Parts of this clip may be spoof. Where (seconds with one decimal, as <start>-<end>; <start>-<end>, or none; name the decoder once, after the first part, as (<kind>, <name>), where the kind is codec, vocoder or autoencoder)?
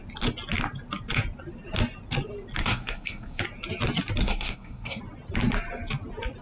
2.6-3.4 (codec, SNAC); 4.2-5.0